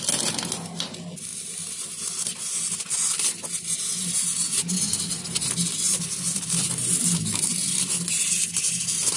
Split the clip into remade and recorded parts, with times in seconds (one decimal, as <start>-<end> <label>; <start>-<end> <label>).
0.0-9.2 recorded